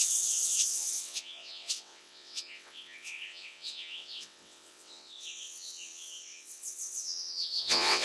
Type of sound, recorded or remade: remade